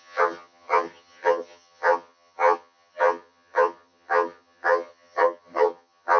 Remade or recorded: remade